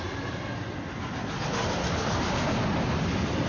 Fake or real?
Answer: real